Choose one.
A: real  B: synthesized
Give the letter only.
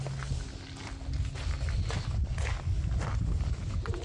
A